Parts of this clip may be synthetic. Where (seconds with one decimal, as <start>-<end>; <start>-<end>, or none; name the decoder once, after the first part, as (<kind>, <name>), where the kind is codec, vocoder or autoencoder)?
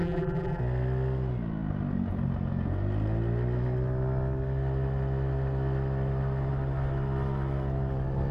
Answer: 0.0-0.6 (vocoder, BigVGAN v2)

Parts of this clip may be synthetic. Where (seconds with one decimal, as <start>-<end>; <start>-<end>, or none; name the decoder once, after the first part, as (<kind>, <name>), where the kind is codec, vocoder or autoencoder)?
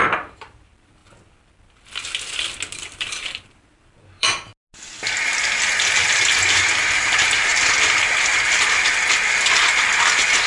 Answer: 0.0-1.0 (vocoder, BigVGAN v2); 2.7-4.5; 6.6-7.5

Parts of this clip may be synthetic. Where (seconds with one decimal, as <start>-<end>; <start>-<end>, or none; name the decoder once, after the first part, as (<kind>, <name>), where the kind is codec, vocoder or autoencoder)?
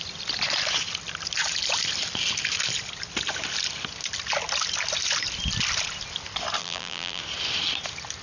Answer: 6.6-7.2 (vocoder, BigVGAN v2)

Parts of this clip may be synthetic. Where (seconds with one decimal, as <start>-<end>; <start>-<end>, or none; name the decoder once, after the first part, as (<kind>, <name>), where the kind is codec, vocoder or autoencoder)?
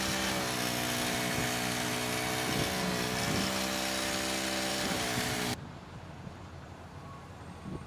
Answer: 4.7-7.9 (vocoder, BigVGAN v2)